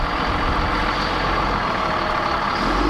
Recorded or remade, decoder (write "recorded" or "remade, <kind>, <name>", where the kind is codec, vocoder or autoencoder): recorded